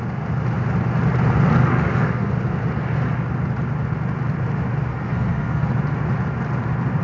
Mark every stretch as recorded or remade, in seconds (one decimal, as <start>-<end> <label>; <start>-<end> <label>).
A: 0.0-1.7 recorded; 1.7-2.3 remade; 2.3-4.9 recorded; 4.9-5.7 remade; 5.7-7.0 recorded